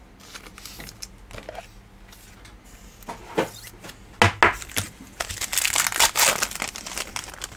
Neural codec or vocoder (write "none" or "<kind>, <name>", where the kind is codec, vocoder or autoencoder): none